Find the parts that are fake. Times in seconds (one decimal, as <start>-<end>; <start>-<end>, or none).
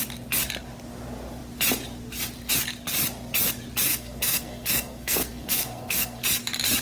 3.9-6.2